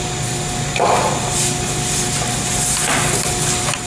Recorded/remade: recorded